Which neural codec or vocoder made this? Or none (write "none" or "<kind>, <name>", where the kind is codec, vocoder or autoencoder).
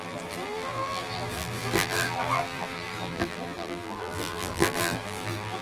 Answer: vocoder, BigVGAN v2